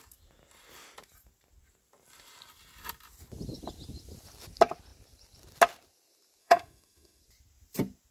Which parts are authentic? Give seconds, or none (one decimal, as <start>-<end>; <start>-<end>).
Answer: 0.0-6.4; 7.2-8.1